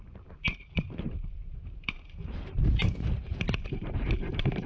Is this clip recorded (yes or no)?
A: no